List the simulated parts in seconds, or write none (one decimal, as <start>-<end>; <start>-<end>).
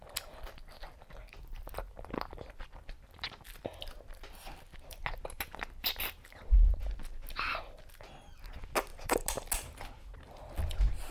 none